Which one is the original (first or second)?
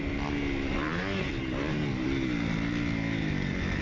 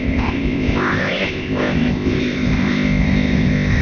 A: first